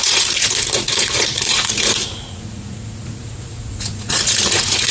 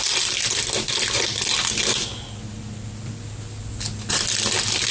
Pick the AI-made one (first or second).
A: first